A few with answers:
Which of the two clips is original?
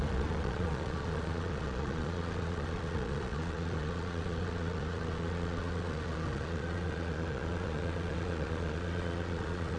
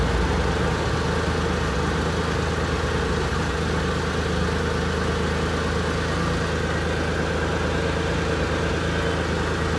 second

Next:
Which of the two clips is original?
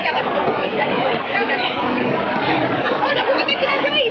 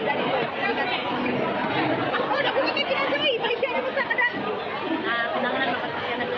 second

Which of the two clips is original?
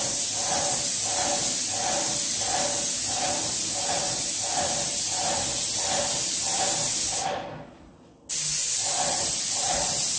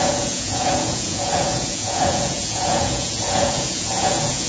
first